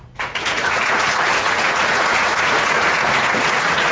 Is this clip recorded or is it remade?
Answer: remade